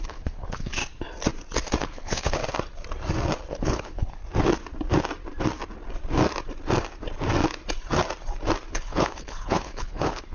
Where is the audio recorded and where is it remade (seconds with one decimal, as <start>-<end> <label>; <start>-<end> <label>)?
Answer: 0.0-0.8 remade; 0.8-1.8 recorded; 1.8-2.4 remade; 2.4-3.5 recorded; 3.5-4.2 remade; 4.2-8.7 recorded; 8.7-10.3 remade